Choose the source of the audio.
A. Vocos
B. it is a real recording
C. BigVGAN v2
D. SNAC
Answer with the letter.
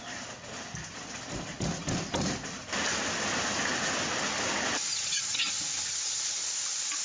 B